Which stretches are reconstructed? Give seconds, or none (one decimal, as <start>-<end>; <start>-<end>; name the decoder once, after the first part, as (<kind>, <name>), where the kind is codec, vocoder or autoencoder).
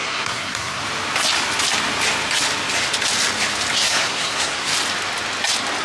0.0-0.8 (codec, SNAC); 3.7-4.7